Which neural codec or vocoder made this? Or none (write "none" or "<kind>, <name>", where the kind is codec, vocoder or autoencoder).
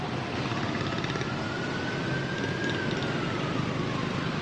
none